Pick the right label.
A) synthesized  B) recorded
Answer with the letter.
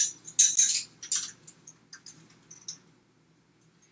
B